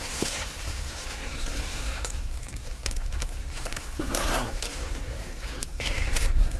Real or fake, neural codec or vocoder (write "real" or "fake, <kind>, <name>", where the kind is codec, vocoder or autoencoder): fake, codec, SNAC